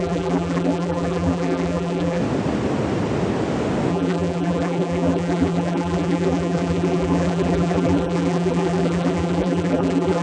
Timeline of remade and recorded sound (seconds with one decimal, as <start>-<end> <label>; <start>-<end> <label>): 0.0-2.2 remade; 2.2-3.9 recorded; 3.9-10.2 remade